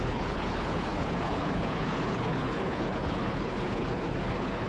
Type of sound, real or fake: fake